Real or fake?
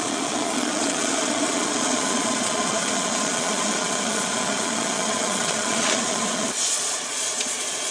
fake